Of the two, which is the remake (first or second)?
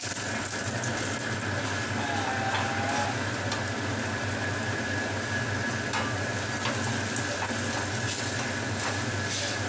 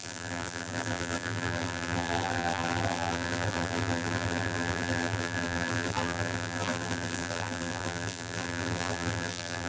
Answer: second